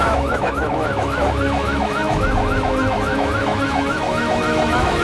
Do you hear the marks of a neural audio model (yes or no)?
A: yes